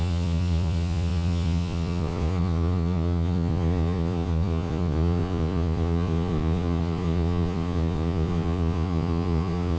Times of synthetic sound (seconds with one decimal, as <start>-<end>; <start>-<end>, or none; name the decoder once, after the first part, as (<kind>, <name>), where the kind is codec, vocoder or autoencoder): 0.0-9.8 (vocoder, Vocos)